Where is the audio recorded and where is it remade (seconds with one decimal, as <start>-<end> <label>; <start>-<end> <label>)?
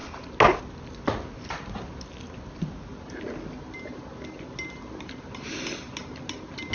0.0-6.7 recorded